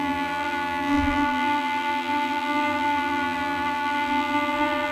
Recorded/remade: remade